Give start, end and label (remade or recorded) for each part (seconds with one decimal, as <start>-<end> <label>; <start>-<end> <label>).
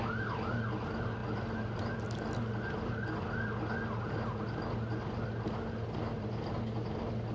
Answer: 0.0-7.3 recorded